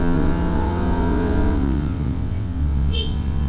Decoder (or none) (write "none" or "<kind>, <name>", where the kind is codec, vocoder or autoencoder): vocoder, WaveNeXt